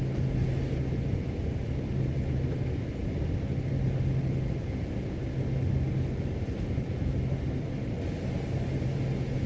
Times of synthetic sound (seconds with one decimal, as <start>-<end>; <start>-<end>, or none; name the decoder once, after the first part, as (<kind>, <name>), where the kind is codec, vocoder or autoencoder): none